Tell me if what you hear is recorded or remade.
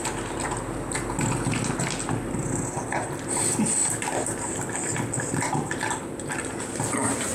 remade